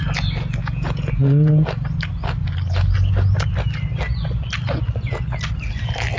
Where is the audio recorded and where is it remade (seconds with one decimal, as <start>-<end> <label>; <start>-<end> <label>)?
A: 0.0-0.6 recorded; 0.6-1.5 remade; 1.5-6.2 recorded

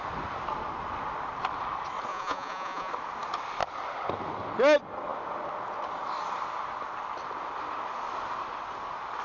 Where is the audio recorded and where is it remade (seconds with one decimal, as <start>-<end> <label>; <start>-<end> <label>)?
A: 0.0-2.1 recorded; 2.1-2.9 remade; 2.9-9.2 recorded